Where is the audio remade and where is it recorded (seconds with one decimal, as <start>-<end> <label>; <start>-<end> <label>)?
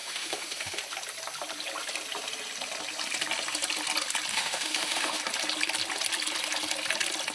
0.0-0.8 remade; 0.8-4.3 recorded; 4.3-5.2 remade; 5.2-7.3 recorded